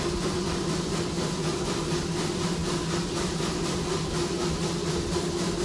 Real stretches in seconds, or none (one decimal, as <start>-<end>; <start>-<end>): 0.0-5.6

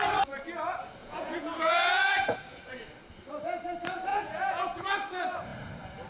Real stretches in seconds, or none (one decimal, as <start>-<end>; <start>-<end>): 0.0-1.0; 2.6-4.1; 4.8-6.1

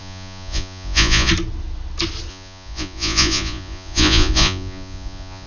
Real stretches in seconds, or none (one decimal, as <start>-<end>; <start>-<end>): 1.3-2.3

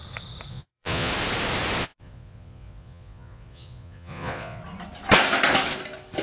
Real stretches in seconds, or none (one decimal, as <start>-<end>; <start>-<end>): 0.0-0.5; 1.1-1.8; 4.6-6.2

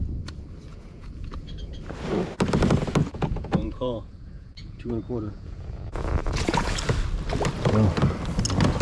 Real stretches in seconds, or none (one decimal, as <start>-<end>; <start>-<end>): 0.0-0.7; 1.3-3.0; 6.8-8.8

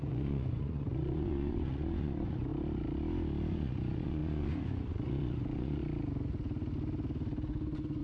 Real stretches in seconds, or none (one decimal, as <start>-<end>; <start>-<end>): 2.5-3.5; 5.8-8.0

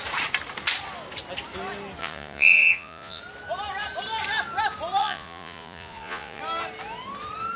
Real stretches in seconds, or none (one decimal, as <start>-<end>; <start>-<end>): 0.0-2.0; 3.2-5.0; 6.4-7.6